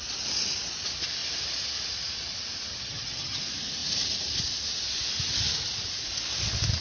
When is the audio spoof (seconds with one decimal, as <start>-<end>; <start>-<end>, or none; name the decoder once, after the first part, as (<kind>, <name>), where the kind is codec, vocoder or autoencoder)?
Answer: 2.7-3.4 (vocoder, HiFi-GAN)